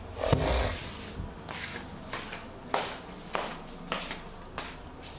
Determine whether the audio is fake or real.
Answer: real